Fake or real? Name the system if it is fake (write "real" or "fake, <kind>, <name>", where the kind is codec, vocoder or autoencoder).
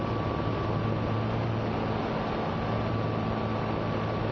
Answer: real